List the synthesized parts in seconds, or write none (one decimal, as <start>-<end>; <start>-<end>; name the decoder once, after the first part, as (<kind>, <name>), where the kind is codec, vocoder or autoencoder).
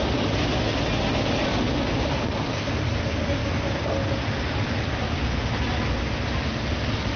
none